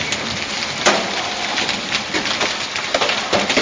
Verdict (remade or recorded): recorded